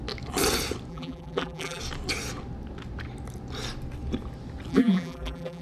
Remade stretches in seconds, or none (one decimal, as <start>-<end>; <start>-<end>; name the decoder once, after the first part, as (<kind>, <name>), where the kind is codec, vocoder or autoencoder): 0.9-1.8 (vocoder, BigVGAN v2); 4.7-5.6